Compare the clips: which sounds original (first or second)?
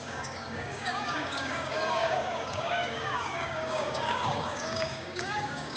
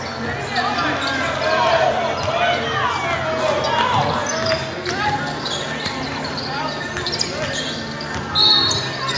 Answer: second